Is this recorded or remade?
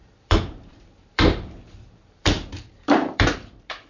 remade